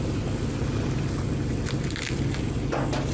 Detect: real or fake real